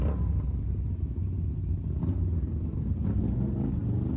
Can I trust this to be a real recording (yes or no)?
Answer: yes